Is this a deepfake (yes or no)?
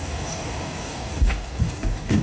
yes